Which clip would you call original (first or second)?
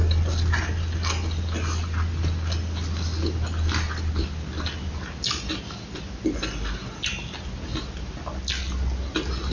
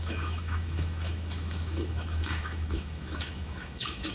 first